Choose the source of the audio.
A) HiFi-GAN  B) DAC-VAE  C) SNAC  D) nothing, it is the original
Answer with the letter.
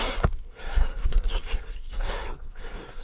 C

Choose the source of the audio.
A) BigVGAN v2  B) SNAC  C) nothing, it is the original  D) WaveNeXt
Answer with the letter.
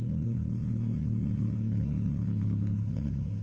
B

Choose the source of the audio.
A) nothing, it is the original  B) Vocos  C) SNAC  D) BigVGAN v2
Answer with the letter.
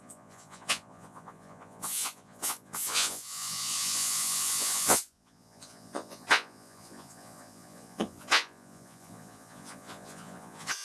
B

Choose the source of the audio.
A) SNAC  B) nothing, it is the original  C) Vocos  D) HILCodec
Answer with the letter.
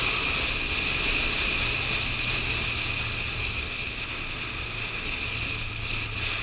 B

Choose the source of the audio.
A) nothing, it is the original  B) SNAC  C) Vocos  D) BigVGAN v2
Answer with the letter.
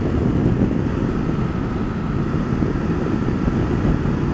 A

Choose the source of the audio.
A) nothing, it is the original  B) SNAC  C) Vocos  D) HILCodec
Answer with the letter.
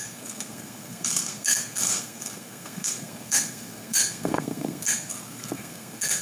B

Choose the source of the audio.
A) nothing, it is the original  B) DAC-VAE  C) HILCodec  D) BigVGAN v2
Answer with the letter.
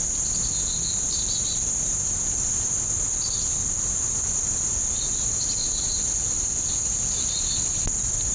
A